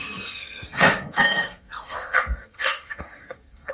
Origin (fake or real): fake